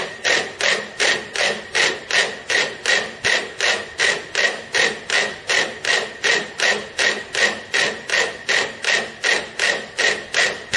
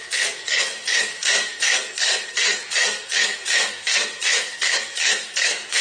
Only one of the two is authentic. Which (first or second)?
first